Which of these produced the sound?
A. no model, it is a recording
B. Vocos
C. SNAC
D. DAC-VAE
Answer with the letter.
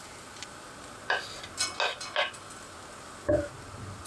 A